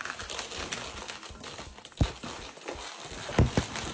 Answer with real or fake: real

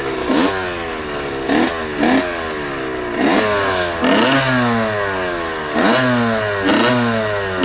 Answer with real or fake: real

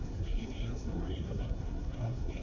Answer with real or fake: fake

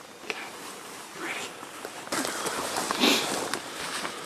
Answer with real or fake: real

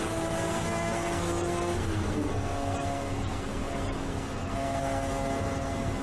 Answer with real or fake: fake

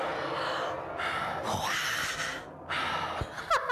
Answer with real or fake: real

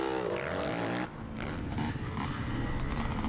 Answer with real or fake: real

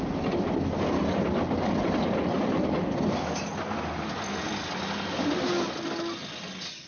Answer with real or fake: real